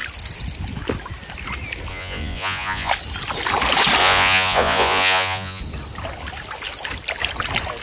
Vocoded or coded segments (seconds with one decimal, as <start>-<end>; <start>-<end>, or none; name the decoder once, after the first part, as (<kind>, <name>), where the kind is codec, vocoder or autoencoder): 1.9-2.9 (vocoder, Vocos); 4.0-5.6